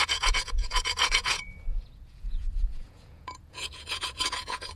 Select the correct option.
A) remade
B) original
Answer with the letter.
A